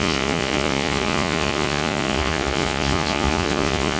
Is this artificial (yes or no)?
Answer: yes